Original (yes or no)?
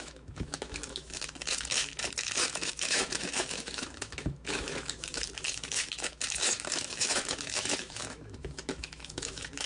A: no